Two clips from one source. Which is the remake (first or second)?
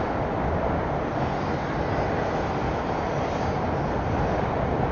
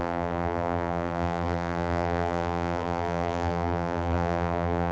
second